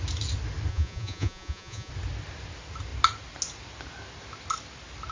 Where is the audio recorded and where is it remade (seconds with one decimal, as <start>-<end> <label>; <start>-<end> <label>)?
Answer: 0.0-0.7 recorded; 0.7-1.9 remade; 1.9-5.1 recorded